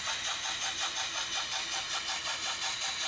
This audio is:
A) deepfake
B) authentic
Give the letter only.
B